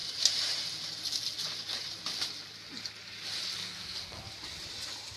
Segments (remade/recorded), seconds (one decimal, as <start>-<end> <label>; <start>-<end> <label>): 0.0-3.6 recorded; 3.6-4.3 remade; 4.3-5.2 recorded

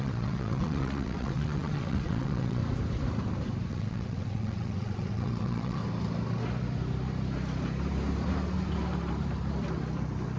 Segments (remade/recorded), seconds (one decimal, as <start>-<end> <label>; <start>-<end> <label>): 0.0-2.6 remade; 2.6-3.7 recorded; 3.7-5.8 remade; 5.8-10.4 recorded

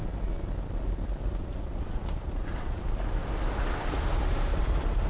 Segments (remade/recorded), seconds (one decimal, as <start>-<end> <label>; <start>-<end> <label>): 0.0-1.4 recorded; 1.4-2.8 remade; 2.8-5.1 recorded

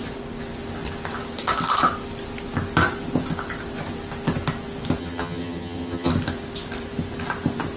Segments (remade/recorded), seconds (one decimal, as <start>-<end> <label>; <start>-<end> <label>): 0.0-5.0 recorded; 5.0-6.1 remade; 6.1-7.8 recorded

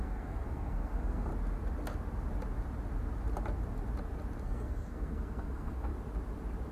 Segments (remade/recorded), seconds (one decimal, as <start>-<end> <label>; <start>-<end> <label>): 0.0-1.3 remade; 1.3-4.4 recorded; 4.4-5.9 remade; 5.9-6.7 recorded

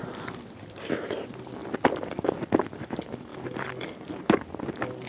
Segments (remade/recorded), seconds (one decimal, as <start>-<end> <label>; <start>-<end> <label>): 0.0-5.1 recorded

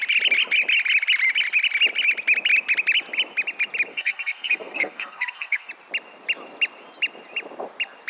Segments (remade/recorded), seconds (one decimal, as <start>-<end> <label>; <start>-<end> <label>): 0.0-3.9 recorded; 3.9-5.7 remade; 5.7-8.1 recorded

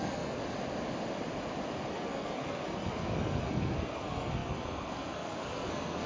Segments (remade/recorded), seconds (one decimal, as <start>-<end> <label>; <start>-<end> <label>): 0.0-0.4 remade; 0.4-1.9 recorded; 1.9-6.1 remade